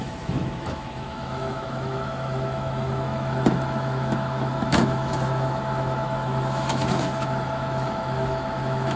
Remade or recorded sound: remade